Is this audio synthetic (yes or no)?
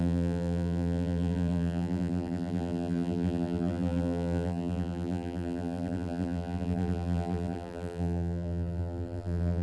yes